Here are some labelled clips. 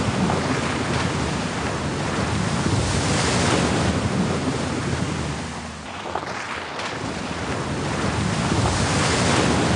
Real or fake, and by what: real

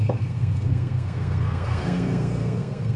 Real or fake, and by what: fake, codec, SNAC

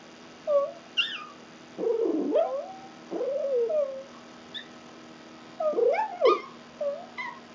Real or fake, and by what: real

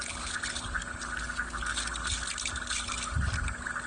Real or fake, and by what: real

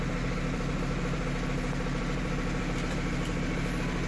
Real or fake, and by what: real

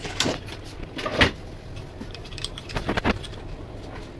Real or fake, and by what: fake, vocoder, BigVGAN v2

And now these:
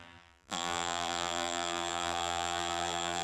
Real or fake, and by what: fake, vocoder, BigVGAN v2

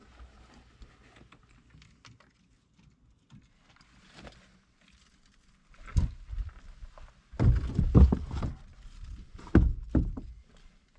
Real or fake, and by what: real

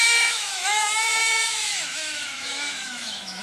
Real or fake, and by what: fake, autoencoder, DAC-VAE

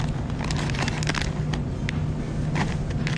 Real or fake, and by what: real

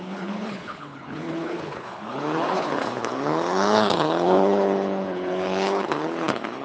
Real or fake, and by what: fake, codec, HILCodec